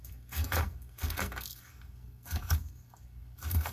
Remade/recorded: remade